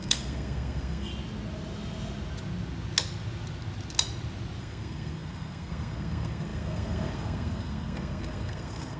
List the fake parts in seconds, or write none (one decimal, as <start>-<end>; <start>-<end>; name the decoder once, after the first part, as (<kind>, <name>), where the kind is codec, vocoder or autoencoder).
0.0-1.1 (codec, SNAC); 4.6-9.0